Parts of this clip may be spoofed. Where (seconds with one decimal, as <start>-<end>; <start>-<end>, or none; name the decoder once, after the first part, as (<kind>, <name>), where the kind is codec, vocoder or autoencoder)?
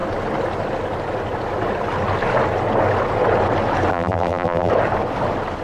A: 3.9-4.7 (vocoder, BigVGAN v2)